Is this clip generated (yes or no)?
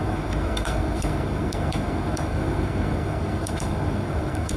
yes